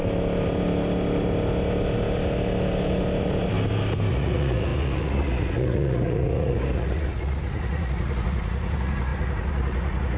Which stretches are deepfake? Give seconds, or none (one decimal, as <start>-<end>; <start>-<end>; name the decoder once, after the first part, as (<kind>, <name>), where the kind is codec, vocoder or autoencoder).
4.1-10.2 (vocoder, Vocos)